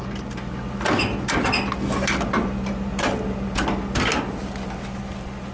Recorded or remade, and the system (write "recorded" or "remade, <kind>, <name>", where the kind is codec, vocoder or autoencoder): recorded